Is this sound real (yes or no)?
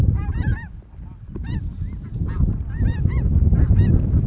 yes